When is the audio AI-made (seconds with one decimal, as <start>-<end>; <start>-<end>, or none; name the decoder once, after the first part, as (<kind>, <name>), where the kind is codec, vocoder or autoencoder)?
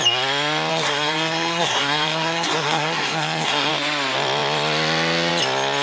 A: 0.7-3.7 (codec, SNAC)